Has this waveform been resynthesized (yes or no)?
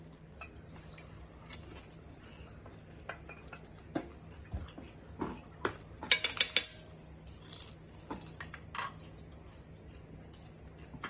no